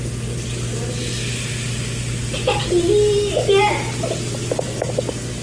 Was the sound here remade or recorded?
recorded